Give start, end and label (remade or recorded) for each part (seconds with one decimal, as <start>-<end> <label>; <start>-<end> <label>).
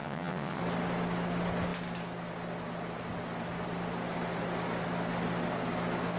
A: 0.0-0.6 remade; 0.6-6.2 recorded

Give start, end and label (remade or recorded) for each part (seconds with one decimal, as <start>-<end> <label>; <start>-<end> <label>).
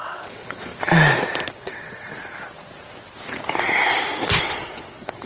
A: 0.0-0.7 remade; 0.7-1.6 recorded; 1.6-2.2 remade; 2.2-4.4 recorded; 4.4-5.3 remade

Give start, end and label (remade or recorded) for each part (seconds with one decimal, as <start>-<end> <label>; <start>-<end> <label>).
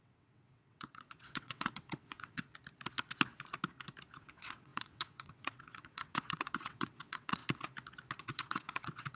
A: 0.0-2.5 remade; 2.5-4.2 recorded; 4.2-7.4 remade; 7.4-8.2 recorded; 8.2-9.2 remade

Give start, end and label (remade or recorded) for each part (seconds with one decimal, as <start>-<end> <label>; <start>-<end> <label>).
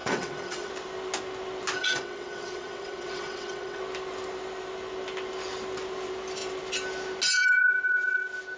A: 0.0-0.7 remade; 0.7-1.8 recorded; 1.8-3.8 remade; 3.8-8.6 recorded